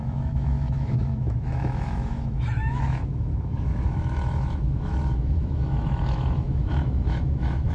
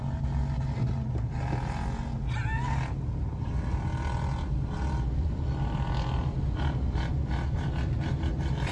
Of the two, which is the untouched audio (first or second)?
second